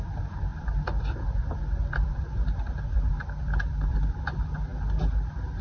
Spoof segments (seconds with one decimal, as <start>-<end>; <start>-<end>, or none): 0.0-4.7